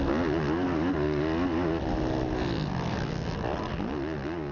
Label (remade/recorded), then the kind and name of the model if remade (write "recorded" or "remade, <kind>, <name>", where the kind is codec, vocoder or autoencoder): recorded